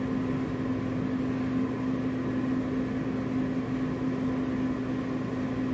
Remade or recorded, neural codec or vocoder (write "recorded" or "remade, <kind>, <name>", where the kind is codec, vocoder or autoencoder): recorded